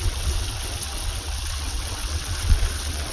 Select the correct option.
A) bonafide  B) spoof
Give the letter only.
B